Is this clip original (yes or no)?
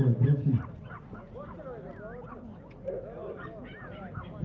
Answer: yes